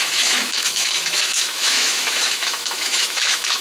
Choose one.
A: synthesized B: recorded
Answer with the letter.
A